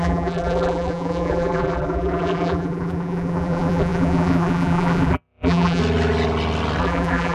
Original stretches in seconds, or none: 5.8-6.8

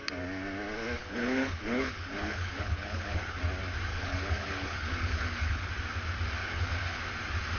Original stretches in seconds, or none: 0.0-1.0; 3.4-3.9; 5.7-6.4; 7.0-7.6

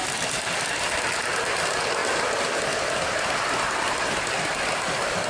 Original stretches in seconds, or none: 0.0-5.3

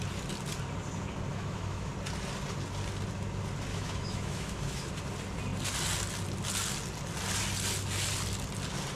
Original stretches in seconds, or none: 0.0-1.3; 1.9-3.7; 4.9-9.0

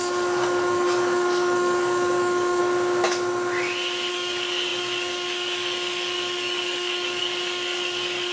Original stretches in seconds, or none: 2.6-4.1

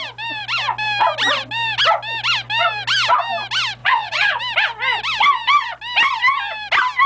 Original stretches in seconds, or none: 0.0-3.8; 4.4-7.1

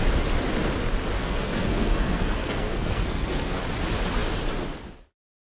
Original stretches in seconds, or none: 0.0-1.2; 3.6-5.6